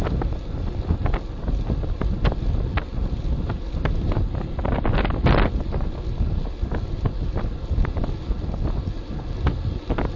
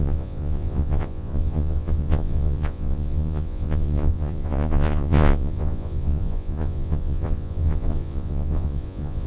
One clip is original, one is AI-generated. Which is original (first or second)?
first